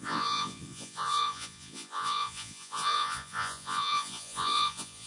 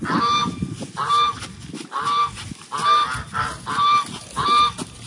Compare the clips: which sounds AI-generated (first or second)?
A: first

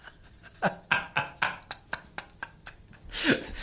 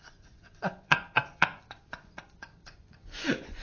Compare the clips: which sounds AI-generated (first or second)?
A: second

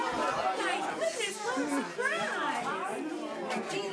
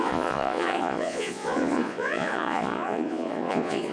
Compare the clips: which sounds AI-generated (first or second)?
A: second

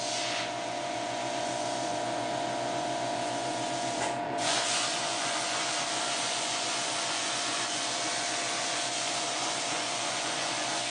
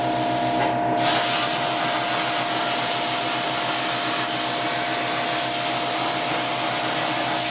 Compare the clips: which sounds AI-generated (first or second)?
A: first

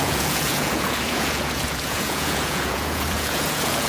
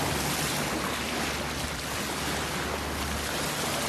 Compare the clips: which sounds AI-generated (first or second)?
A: first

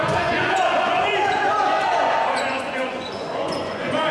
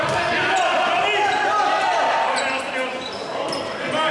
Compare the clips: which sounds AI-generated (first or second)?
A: first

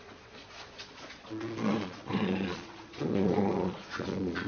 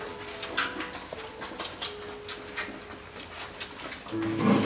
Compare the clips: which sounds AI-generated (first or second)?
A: first